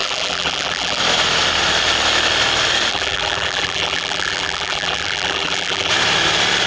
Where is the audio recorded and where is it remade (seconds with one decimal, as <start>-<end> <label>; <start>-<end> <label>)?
0.0-1.0 remade; 1.0-2.9 recorded; 2.9-5.9 remade; 5.9-6.7 recorded